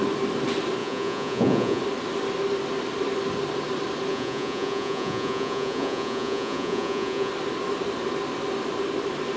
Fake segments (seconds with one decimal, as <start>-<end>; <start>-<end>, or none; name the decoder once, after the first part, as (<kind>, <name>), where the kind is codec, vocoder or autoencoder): 0.8-1.8 (vocoder, Vocos); 4.1-7.3